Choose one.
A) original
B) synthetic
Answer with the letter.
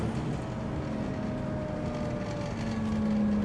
A